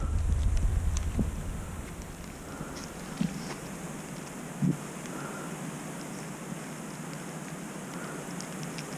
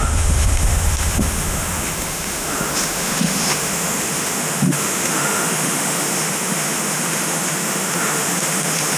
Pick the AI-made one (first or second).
second